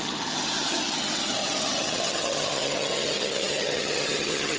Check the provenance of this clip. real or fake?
fake